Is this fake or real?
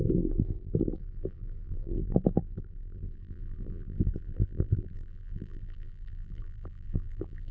fake